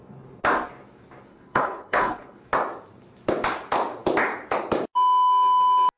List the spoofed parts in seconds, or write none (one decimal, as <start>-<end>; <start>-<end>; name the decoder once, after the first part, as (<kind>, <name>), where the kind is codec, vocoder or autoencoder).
1.3-2.4 (codec, HILCodec)